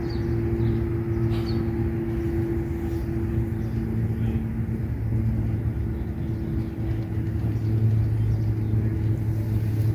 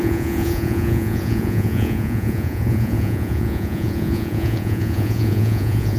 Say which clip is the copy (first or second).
second